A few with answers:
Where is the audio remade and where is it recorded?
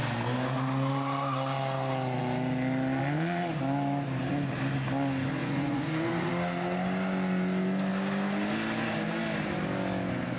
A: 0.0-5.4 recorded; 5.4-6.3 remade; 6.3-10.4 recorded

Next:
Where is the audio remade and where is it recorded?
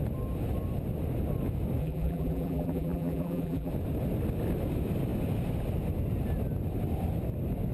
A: 0.0-1.8 recorded; 1.8-3.7 remade; 3.7-7.7 recorded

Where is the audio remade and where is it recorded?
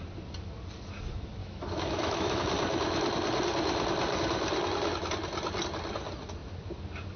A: 0.0-1.4 recorded; 1.4-2.4 remade; 2.4-7.2 recorded